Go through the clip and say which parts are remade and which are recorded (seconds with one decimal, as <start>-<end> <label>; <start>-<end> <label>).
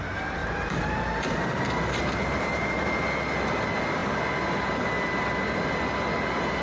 0.0-0.4 recorded; 0.4-2.8 remade; 2.8-6.6 recorded